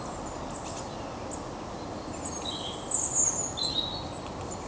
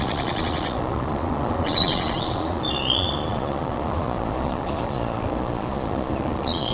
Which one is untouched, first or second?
first